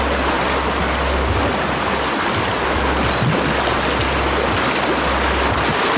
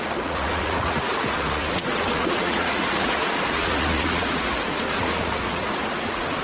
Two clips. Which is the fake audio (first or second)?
second